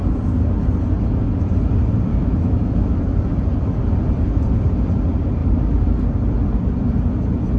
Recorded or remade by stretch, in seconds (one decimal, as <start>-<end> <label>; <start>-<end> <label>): 0.0-2.1 recorded; 2.1-3.0 remade; 3.0-7.6 recorded